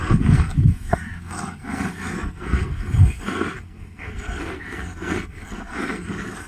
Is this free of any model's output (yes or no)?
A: no